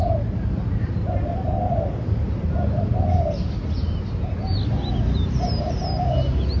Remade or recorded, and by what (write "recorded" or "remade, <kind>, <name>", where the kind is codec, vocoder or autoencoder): recorded